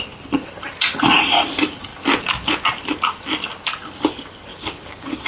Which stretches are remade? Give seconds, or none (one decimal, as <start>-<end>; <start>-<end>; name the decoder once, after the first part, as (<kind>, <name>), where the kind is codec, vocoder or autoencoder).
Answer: 4.5-5.3 (codec, DAC)